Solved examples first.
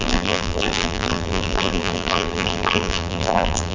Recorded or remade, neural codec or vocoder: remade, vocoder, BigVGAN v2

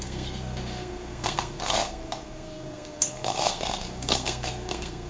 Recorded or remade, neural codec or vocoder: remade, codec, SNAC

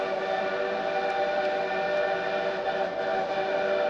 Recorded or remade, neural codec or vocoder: recorded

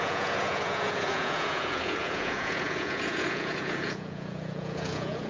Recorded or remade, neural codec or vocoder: remade, vocoder, Vocos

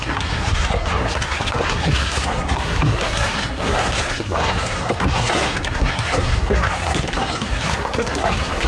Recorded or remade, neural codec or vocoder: remade, codec, SNAC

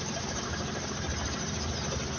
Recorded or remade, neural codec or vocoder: recorded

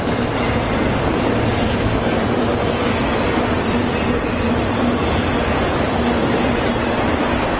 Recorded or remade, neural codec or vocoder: recorded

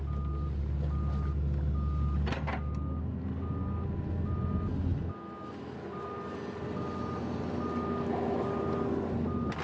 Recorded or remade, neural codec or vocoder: recorded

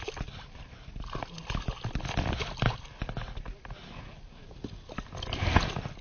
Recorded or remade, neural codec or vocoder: recorded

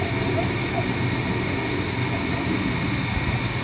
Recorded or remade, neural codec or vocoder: recorded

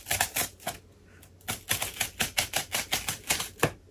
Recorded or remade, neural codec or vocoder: recorded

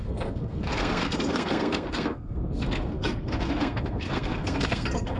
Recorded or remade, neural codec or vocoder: remade, codec, SNAC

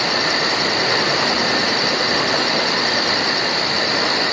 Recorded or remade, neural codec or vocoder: recorded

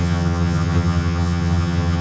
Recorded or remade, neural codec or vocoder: remade, vocoder, HiFi-GAN